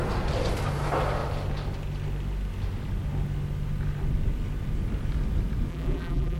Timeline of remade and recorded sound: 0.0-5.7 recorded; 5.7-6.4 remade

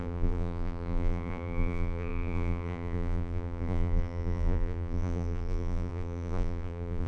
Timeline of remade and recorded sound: 0.0-7.1 remade

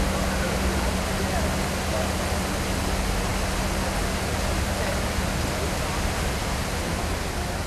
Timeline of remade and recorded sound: 0.0-7.7 recorded